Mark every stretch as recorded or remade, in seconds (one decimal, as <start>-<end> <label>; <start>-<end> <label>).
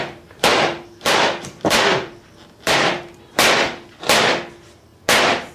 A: 0.0-0.5 recorded; 0.5-3.2 remade; 3.2-5.5 recorded